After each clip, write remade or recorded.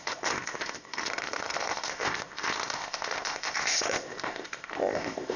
remade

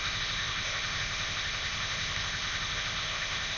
remade